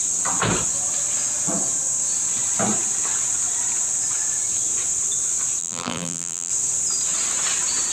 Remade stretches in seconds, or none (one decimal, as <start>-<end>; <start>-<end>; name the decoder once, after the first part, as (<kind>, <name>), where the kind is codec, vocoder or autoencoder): 5.6-6.5 (vocoder, BigVGAN v2)